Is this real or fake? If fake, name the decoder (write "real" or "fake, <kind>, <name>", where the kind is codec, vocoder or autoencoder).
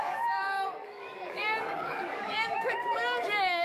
fake, codec, DAC